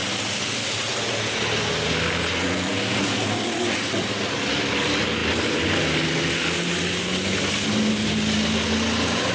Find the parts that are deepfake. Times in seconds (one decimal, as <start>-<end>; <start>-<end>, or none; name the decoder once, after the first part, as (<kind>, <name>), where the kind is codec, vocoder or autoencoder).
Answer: none